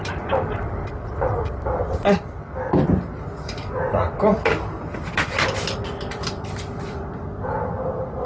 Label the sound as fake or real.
fake